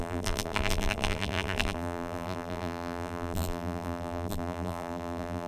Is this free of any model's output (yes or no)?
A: no